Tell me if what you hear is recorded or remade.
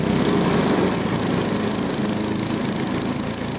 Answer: recorded